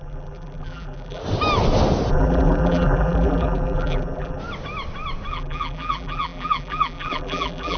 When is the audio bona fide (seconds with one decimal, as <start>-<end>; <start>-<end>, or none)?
1.2-2.1; 4.4-5.3